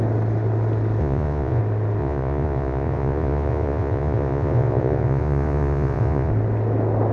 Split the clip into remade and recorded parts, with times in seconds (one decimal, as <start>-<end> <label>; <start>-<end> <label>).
0.0-1.0 recorded; 1.0-1.6 remade; 1.6-2.0 recorded; 2.0-6.3 remade; 6.3-7.1 recorded